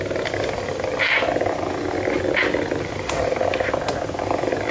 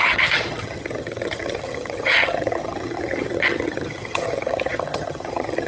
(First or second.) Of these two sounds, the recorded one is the first